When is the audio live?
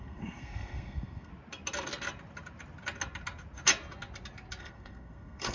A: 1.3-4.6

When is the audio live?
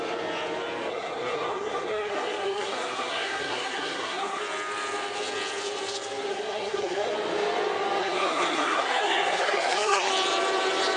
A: 0.0-0.9; 4.4-6.3; 7.1-8.0; 10.1-11.0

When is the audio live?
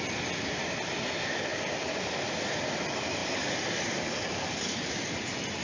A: 0.0-1.5; 2.3-5.6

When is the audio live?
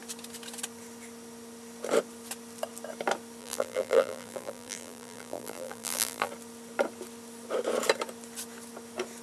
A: 0.0-3.4; 6.3-9.2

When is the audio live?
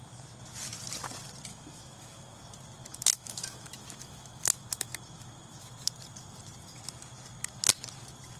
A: 0.0-1.5; 2.3-2.8; 5.7-8.4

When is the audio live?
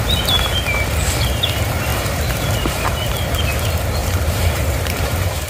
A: 0.0-1.9; 3.4-4.0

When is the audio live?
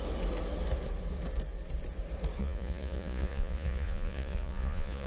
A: 0.0-2.4